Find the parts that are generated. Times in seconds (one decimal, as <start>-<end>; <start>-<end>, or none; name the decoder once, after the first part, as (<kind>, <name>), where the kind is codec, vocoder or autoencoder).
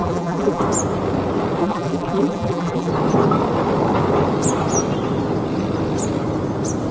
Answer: 0.0-0.6 (vocoder, BigVGAN v2); 1.6-2.9